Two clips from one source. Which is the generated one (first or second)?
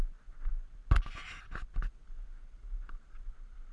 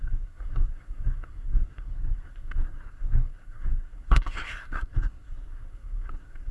second